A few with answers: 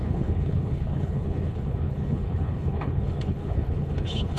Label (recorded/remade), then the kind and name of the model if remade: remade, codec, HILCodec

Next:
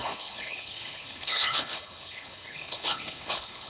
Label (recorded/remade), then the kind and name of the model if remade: remade, codec, HILCodec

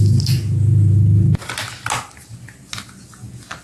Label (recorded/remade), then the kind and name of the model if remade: recorded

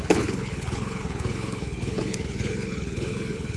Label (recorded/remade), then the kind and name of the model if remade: remade, codec, HILCodec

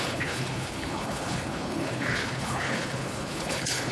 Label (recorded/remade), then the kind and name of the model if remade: remade, codec, HILCodec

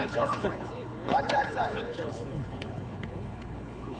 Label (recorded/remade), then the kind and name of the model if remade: remade, codec, HILCodec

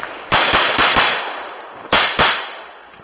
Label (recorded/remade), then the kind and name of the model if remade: recorded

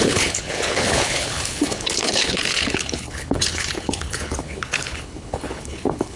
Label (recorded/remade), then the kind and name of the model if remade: remade, codec, HILCodec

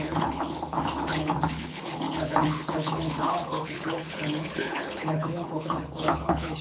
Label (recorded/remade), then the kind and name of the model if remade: remade, codec, HILCodec